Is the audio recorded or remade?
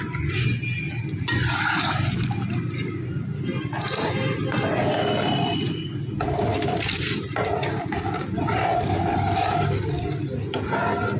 recorded